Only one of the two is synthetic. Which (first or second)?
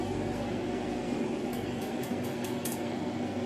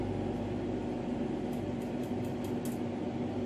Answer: first